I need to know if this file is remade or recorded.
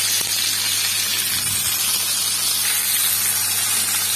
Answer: recorded